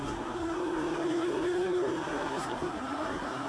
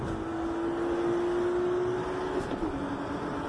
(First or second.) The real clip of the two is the second